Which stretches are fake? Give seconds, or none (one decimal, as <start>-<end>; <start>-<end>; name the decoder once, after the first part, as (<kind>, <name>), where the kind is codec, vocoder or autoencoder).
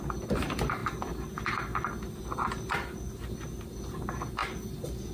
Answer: none